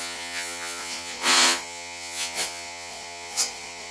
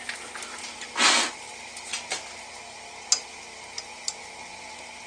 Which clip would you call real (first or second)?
second